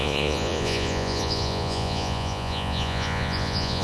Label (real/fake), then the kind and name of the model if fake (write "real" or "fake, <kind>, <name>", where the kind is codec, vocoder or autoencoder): fake, vocoder, Vocos